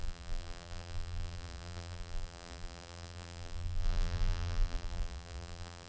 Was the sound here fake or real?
fake